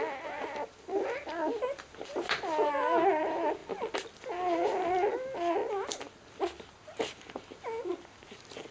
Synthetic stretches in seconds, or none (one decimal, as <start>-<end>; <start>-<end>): none